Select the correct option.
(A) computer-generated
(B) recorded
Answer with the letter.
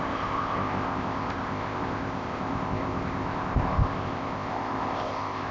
A